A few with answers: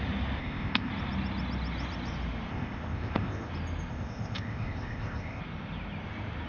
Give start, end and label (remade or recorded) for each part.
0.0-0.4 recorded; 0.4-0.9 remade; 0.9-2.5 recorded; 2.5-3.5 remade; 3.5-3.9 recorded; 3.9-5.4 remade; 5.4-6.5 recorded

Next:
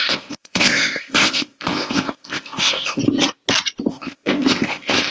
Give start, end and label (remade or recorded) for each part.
0.0-3.0 remade; 3.0-3.9 recorded; 3.9-5.1 remade

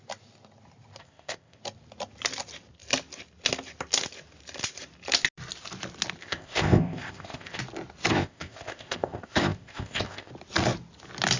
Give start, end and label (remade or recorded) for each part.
0.0-1.0 recorded; 1.0-1.6 remade; 1.6-6.2 recorded; 6.2-7.6 remade; 7.6-8.1 recorded; 8.1-10.3 remade; 10.3-11.4 recorded

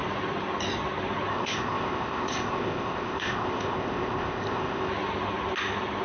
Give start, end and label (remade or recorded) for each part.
0.0-1.3 recorded; 1.3-4.9 remade; 4.9-6.0 recorded

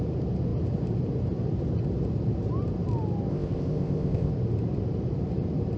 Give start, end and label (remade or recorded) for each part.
0.0-3.3 recorded; 3.3-4.3 remade; 4.3-5.8 recorded

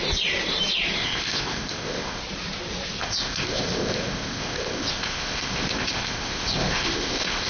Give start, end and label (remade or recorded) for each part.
0.0-1.0 recorded; 1.0-2.2 remade; 2.2-3.0 recorded; 3.0-7.5 remade

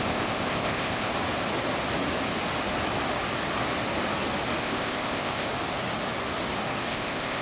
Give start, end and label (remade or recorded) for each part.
0.0-1.1 remade; 1.1-4.6 recorded; 4.6-5.5 remade; 5.5-6.9 recorded; 6.9-7.4 remade

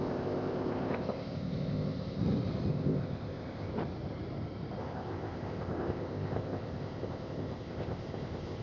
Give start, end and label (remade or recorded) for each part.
0.0-2.2 remade; 2.2-2.7 recorded; 2.7-3.7 remade; 3.7-4.8 recorded; 4.8-8.6 remade